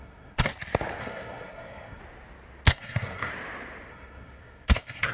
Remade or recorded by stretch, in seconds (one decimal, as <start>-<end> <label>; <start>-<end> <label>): 0.0-0.5 remade; 0.5-1.0 recorded; 1.0-2.0 remade; 2.0-2.7 recorded; 2.7-3.3 remade; 3.3-3.9 recorded; 3.9-5.1 remade